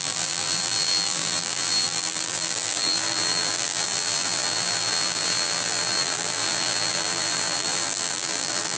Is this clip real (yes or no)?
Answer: no